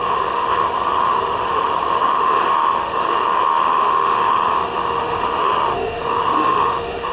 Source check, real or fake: fake